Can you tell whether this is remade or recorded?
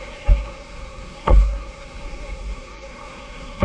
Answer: remade